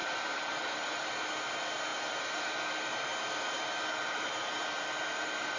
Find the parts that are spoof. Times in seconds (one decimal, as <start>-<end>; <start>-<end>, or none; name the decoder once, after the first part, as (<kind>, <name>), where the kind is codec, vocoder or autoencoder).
0.0-1.1 (vocoder, BigVGAN v2); 1.9-5.6